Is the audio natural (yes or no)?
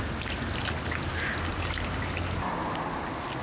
yes